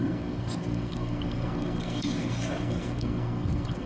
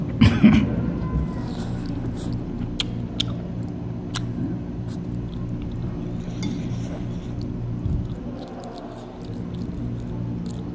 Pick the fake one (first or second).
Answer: first